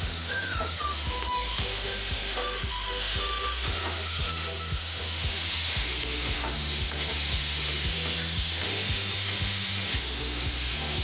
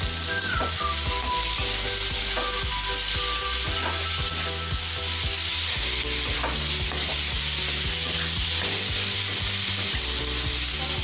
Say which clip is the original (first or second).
second